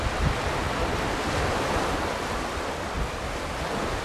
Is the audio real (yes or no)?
no